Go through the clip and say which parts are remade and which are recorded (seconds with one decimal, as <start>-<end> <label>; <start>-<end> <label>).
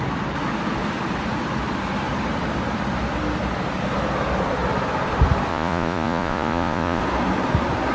0.0-5.5 recorded; 5.5-7.0 remade; 7.0-7.9 recorded